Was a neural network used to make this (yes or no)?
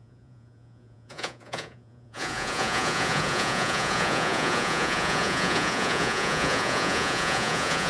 yes